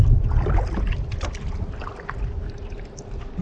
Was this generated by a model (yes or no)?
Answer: no